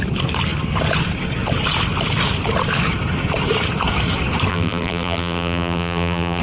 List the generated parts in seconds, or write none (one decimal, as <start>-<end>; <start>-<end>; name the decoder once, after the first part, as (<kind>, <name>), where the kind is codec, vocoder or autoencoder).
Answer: 4.5-6.4 (vocoder, BigVGAN v2)